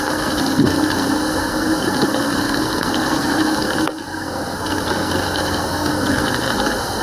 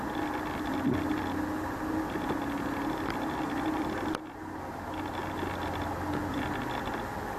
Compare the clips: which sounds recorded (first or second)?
second